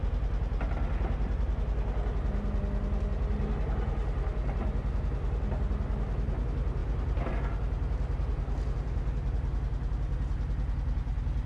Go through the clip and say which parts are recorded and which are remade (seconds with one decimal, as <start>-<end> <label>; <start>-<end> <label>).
0.0-6.8 recorded; 6.8-7.3 remade; 7.3-11.5 recorded